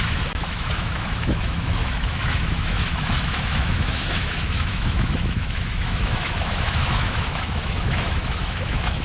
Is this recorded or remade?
remade